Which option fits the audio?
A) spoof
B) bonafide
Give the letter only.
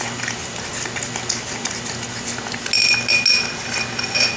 B